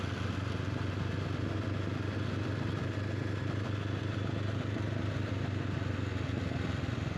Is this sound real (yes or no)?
yes